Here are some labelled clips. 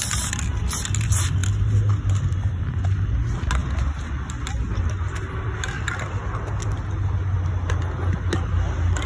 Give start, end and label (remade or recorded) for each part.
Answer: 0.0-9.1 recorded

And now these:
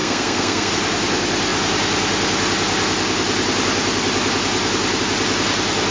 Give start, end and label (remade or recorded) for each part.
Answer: 0.0-0.7 remade; 0.7-5.9 recorded

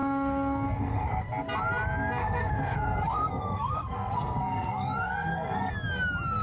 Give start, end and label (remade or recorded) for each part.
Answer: 0.0-1.3 remade; 1.3-2.2 recorded; 2.2-5.7 remade; 5.7-6.4 recorded

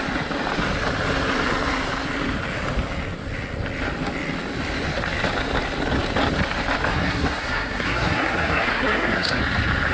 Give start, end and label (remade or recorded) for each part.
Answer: 0.0-6.9 recorded; 6.9-9.4 remade; 9.4-9.9 recorded

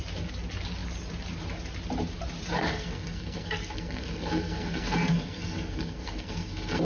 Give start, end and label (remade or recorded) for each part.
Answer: 0.0-2.6 recorded; 2.6-6.8 remade

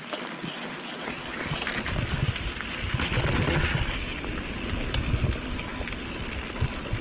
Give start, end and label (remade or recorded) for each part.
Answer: 0.0-7.0 recorded

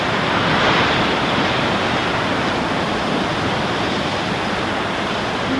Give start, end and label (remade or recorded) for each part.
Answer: 0.0-5.6 recorded

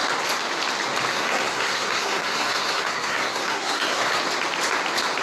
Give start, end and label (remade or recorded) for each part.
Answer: 0.0-1.1 recorded; 1.1-4.2 remade; 4.2-5.2 recorded